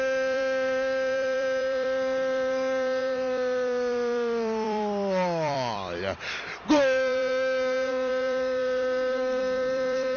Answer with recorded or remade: remade